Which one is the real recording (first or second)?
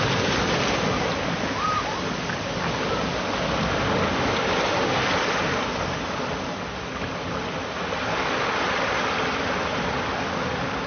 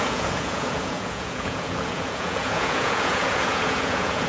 first